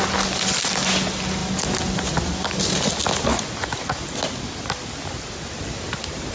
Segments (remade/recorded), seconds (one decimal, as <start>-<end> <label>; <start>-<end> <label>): 0.0-6.3 recorded